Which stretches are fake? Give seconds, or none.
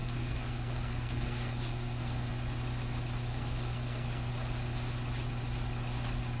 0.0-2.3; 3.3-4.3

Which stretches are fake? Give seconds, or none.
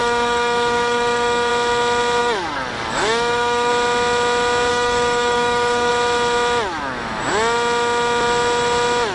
0.0-1.5; 2.2-3.7; 4.7-5.9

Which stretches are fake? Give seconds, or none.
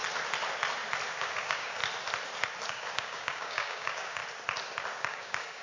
1.2-1.8; 2.7-4.2; 5.0-5.6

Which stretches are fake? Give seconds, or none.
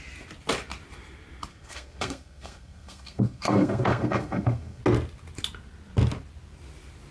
1.5-4.8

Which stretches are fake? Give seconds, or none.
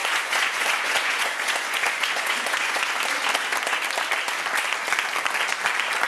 0.0-2.9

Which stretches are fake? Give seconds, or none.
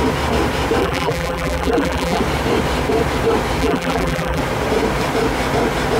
0.8-2.2; 3.6-4.4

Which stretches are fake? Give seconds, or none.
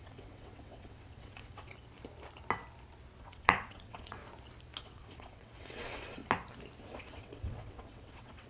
0.0-1.7; 3.2-4.2; 4.8-6.2; 6.8-8.5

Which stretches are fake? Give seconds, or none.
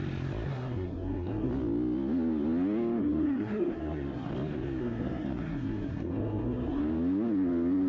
0.5-1.5; 3.0-4.3; 4.8-6.8